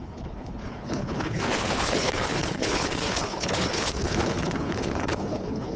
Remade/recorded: remade